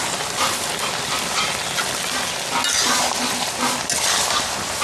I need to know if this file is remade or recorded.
recorded